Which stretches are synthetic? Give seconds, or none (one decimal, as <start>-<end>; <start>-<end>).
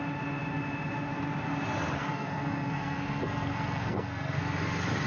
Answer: 2.0-4.4